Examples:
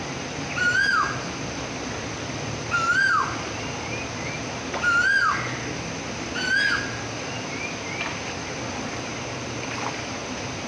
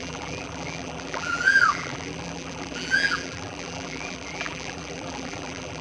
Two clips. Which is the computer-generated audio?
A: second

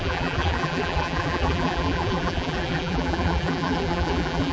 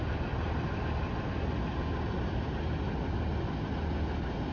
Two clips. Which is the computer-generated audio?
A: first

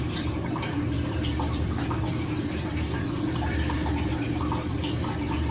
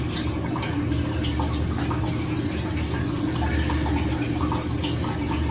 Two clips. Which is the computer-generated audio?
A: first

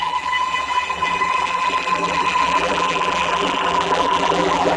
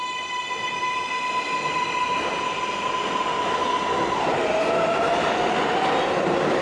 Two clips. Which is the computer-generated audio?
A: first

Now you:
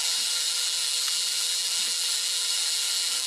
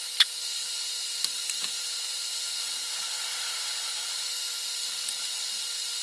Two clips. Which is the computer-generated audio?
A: first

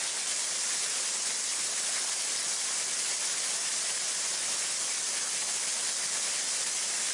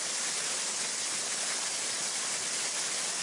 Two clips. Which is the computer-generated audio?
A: second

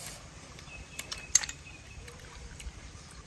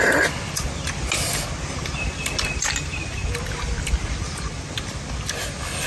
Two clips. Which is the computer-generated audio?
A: first